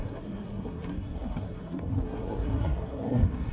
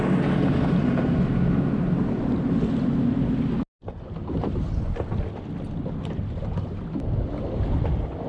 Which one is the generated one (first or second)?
first